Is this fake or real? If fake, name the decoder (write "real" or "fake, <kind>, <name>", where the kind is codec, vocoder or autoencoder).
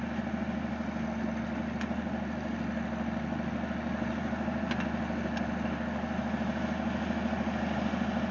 real